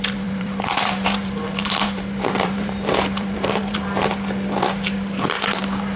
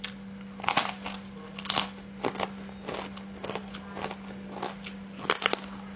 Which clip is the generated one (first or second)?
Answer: first